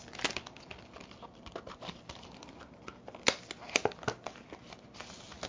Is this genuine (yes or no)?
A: yes